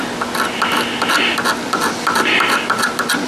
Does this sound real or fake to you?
real